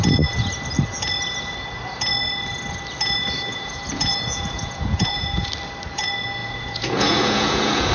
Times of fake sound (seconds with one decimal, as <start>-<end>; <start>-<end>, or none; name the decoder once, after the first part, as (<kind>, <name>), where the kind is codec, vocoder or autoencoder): 3.5-5.5 (vocoder, Vocos); 6.4-7.9

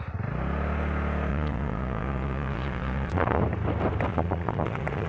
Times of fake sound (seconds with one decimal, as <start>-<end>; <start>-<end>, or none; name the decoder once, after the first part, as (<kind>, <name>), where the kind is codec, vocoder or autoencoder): 1.3-3.4 (vocoder, Vocos); 4.1-5.1